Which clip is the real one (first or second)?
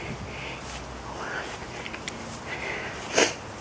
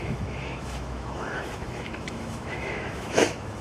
first